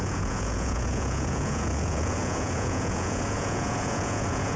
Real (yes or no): no